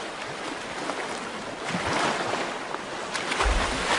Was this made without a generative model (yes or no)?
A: yes